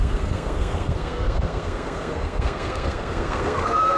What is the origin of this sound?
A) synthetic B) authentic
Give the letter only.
A